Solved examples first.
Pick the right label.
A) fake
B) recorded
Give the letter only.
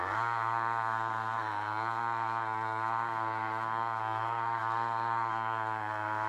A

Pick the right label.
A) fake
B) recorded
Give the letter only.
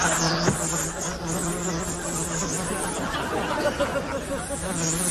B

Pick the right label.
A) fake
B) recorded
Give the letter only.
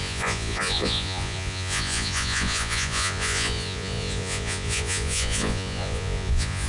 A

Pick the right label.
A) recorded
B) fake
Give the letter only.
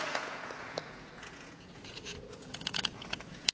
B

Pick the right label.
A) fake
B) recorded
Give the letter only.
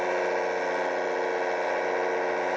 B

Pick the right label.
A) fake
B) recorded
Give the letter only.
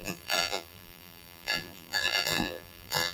A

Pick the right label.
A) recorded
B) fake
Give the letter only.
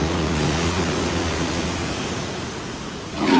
B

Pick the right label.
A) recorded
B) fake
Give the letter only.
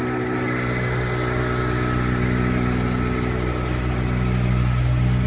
A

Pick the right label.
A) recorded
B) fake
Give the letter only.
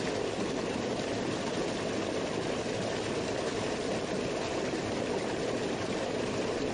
A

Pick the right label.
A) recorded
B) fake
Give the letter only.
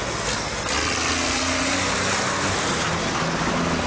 A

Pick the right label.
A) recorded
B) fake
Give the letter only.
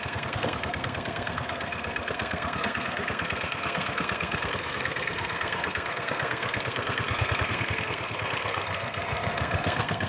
B